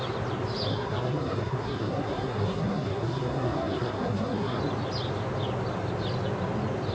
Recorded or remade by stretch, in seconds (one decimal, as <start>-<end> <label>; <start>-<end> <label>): 0.0-0.7 recorded; 0.7-4.6 remade; 4.6-6.9 recorded